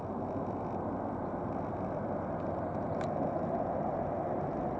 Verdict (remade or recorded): recorded